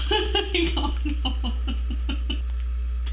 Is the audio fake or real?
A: real